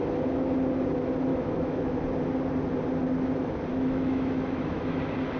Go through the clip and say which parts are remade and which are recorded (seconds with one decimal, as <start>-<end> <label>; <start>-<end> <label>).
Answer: 0.0-1.3 recorded; 1.3-2.0 remade; 2.0-3.7 recorded; 3.7-5.0 remade; 5.0-5.4 recorded